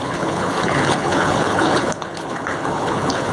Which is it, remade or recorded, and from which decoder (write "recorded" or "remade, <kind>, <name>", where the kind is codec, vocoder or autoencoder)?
remade, codec, HILCodec